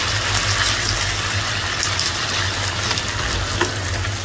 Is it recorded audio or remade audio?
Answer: recorded